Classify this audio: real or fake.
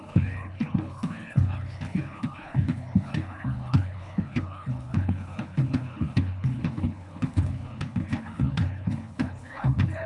fake